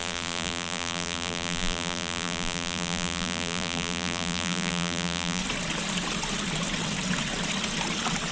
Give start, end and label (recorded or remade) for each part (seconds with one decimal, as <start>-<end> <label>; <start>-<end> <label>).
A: 0.0-5.4 remade; 5.4-8.3 recorded